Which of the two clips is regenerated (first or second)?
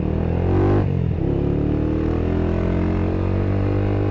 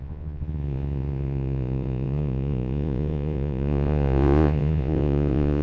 second